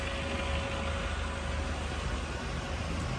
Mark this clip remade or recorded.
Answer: recorded